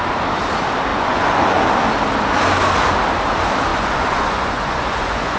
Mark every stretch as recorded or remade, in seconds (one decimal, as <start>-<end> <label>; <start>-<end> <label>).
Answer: 0.0-0.9 recorded; 0.9-1.6 remade; 1.6-3.7 recorded; 3.7-5.4 remade